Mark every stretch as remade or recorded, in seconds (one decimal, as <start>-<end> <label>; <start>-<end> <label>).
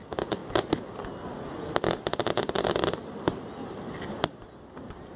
0.0-5.2 recorded